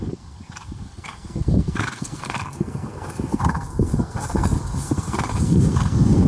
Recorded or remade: remade